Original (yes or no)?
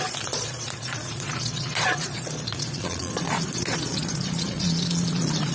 no